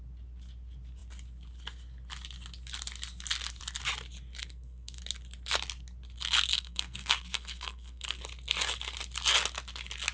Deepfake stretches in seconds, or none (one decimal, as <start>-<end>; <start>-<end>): 4.4-5.0; 6.5-8.2